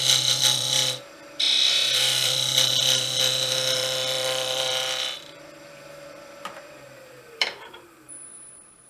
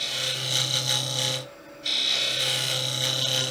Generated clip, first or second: first